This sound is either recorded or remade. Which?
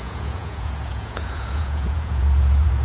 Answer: remade